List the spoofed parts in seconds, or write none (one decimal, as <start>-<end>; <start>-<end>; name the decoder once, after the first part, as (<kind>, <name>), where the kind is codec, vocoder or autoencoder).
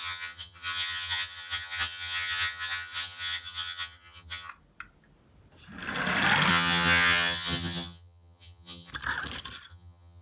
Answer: 0.0-4.5 (vocoder, HiFi-GAN); 6.5-8.9; 9.7-10.2